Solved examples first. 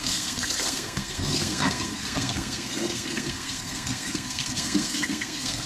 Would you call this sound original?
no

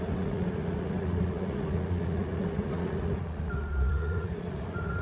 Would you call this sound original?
no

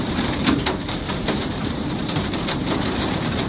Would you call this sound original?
no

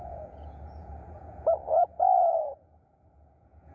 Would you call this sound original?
no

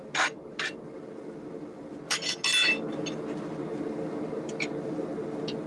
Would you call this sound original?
yes